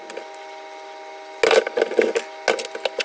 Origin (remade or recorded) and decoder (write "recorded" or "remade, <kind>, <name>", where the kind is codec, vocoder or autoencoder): recorded